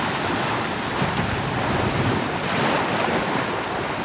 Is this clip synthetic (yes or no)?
no